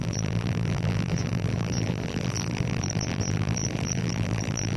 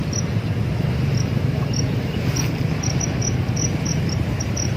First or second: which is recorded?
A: second